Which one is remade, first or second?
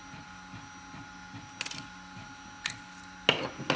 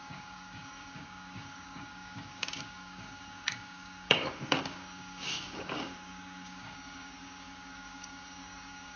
second